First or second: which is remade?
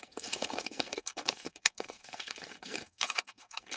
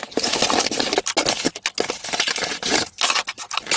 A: first